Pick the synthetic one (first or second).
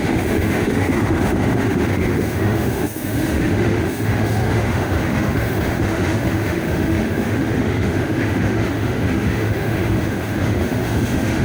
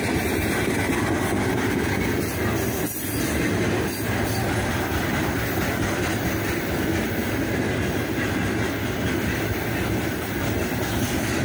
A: first